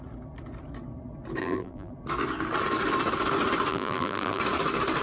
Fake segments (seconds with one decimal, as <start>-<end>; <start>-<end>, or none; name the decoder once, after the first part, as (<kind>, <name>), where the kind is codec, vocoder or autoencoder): 1.4-1.9 (vocoder, BigVGAN v2); 3.7-4.4